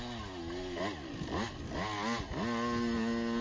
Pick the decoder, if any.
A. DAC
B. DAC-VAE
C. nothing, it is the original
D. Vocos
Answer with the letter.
C